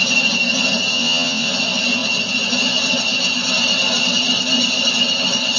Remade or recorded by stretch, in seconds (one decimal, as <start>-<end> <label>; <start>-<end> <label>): 0.0-0.9 recorded; 0.9-1.5 remade; 1.5-5.6 recorded